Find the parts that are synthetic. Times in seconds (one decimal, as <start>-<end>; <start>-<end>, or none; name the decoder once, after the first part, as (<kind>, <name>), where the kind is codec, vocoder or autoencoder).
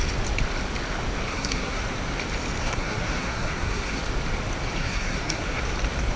1.3-1.8 (codec, SNAC); 2.6-4.0; 4.8-5.6